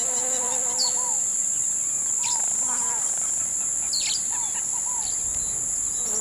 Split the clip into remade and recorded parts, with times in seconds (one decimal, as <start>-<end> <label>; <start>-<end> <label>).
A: 0.0-6.2 recorded